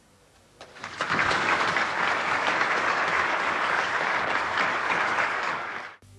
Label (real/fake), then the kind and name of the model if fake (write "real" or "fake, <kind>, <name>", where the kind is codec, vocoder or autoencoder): fake, codec, DAC